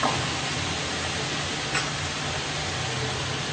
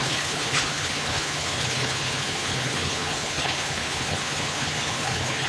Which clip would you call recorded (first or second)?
first